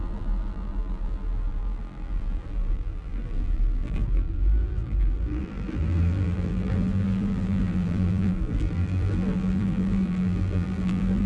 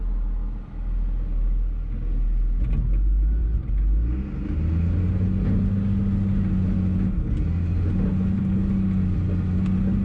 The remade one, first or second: first